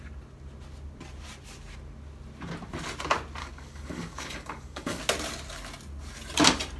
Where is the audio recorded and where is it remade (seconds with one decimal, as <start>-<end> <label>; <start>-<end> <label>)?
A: 0.0-3.4 recorded; 3.4-5.0 remade; 5.0-6.8 recorded